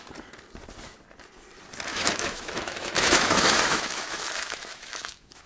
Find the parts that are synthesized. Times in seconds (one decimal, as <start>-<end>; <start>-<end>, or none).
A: 1.9-5.5